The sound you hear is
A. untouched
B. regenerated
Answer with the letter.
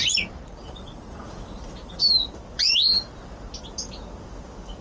A